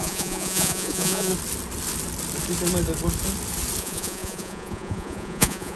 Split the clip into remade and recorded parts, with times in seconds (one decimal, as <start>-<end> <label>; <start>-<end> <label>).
0.0-1.3 remade; 1.3-3.8 recorded; 3.8-5.8 remade